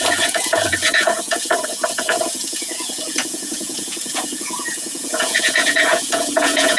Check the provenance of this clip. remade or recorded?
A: remade